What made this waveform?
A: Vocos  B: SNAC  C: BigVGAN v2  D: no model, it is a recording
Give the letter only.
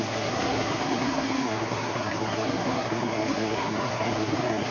B